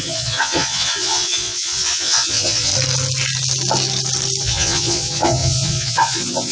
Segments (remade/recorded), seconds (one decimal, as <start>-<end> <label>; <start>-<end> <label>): 0.0-2.7 remade; 2.7-4.4 recorded; 4.4-6.5 remade